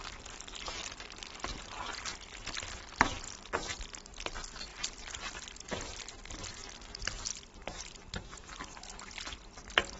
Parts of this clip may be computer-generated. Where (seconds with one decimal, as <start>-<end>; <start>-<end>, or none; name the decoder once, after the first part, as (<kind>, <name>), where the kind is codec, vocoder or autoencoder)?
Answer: 4.7-6.7 (vocoder, BigVGAN v2); 7.6-9.6